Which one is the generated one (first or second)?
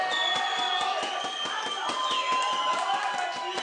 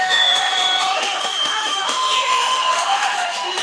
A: second